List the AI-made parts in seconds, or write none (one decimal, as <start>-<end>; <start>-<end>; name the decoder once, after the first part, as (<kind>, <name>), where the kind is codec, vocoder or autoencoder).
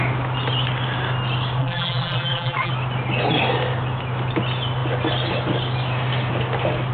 1.6-2.7 (vocoder, BigVGAN v2)